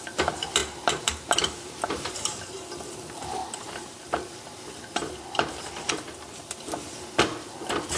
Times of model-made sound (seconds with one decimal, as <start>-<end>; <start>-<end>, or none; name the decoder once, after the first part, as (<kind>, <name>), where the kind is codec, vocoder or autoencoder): 0.6-2.5 (vocoder, BigVGAN v2); 3.4-4.8